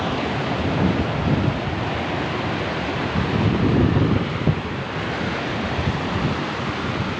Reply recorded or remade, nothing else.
recorded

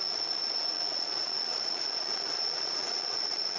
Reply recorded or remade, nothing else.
remade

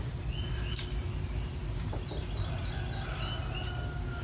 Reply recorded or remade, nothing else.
recorded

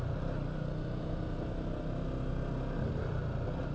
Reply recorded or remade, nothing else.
recorded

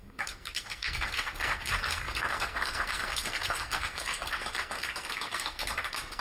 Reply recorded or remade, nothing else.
remade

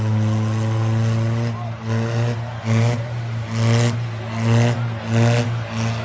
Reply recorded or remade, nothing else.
recorded